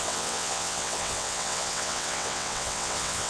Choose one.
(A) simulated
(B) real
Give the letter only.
A